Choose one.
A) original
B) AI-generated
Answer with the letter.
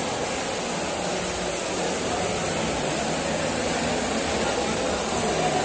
A